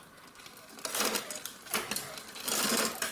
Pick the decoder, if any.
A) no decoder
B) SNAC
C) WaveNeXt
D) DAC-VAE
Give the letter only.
A